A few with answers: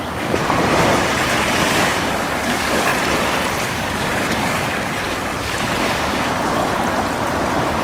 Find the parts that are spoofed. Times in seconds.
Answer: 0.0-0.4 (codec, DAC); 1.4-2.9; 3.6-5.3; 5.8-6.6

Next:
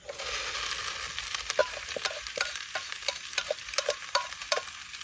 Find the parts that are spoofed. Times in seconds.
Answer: 1.6-4.6 (vocoder, BigVGAN v2)

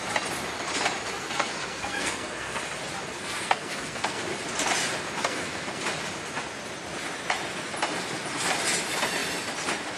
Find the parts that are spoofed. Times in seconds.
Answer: 1.1-2.6 (codec, SNAC); 3.1-4.2; 5.2-5.8

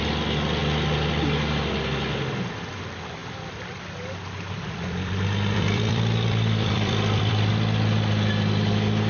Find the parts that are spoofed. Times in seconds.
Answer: 3.2-7.5 (vocoder, BigVGAN v2)

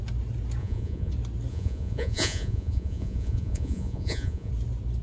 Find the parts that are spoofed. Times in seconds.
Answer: 0.6-1.1 (vocoder, Vocos); 1.5-4.5

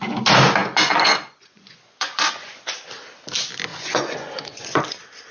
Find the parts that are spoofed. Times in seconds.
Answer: 0.6-2.6 (vocoder, Vocos); 3.7-4.8